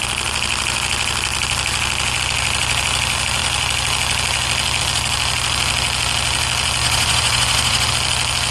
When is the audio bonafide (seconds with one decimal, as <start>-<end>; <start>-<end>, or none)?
0.0-6.8; 7.9-8.5